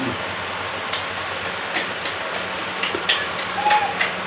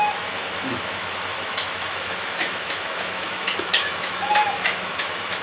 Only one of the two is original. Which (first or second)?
first